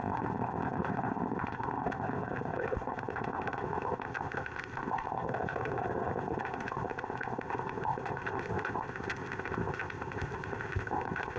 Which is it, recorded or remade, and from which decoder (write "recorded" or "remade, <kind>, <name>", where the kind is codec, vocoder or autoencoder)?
remade, codec, ZipCodec